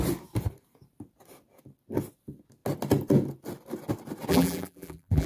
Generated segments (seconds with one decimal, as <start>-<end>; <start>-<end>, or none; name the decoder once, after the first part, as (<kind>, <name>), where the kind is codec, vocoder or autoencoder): 4.3-5.3 (vocoder, BigVGAN v2)